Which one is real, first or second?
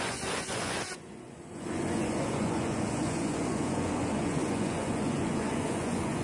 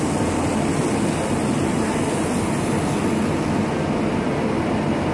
second